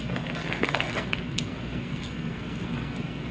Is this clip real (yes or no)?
no